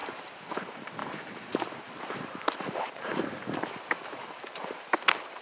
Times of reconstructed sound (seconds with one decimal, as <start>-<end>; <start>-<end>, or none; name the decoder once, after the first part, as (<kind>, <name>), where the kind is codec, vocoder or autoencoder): 0.0-3.1 (vocoder, BigVGAN v2); 3.9-4.9